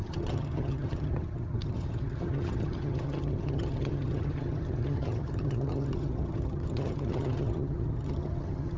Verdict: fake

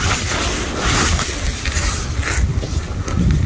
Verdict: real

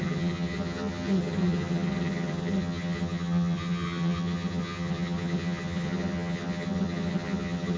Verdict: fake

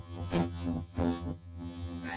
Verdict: fake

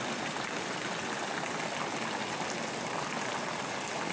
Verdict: real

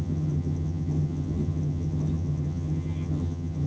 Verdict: fake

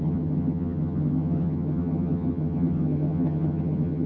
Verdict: fake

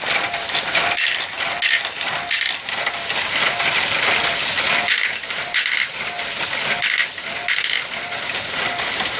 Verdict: real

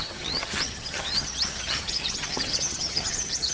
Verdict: fake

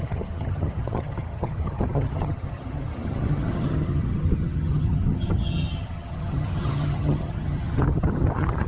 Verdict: fake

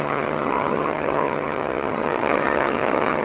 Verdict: fake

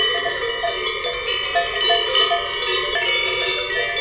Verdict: real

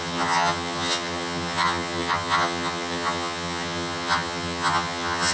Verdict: fake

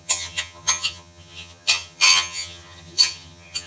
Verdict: fake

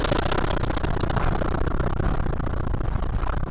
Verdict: real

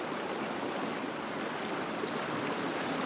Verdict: real